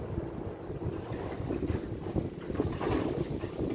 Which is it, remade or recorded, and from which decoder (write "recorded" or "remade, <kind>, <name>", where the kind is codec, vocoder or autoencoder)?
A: recorded